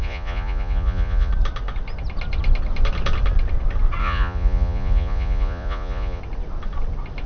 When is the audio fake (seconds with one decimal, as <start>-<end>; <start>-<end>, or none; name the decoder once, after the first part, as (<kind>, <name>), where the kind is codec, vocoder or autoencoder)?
0.0-1.3 (vocoder, Vocos); 4.0-6.2